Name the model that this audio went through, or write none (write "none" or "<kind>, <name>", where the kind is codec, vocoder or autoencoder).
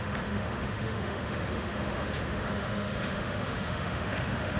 autoencoder, DAC-VAE